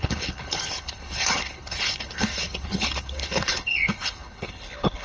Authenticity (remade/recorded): remade